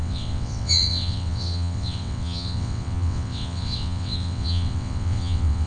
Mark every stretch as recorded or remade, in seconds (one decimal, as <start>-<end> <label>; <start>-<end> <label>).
0.0-5.7 remade